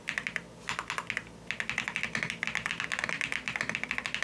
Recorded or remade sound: recorded